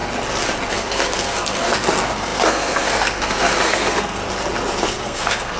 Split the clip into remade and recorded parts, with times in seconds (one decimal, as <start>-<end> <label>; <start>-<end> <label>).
0.0-0.7 recorded; 0.7-4.2 remade; 4.2-4.9 recorded; 4.9-5.6 remade